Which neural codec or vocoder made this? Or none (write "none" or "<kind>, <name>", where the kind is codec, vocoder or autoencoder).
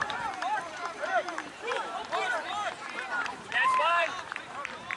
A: vocoder, BigVGAN v2